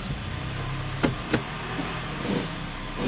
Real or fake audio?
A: real